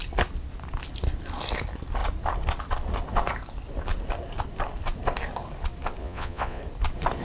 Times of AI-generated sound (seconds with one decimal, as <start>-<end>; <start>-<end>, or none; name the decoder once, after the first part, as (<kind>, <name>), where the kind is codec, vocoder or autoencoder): 6.0-6.6 (vocoder, Vocos)